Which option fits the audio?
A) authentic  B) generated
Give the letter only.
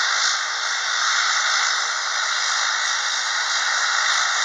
A